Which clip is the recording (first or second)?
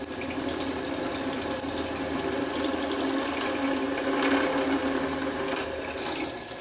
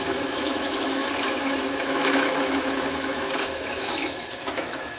first